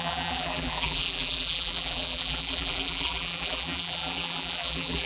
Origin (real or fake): fake